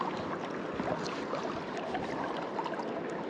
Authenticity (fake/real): real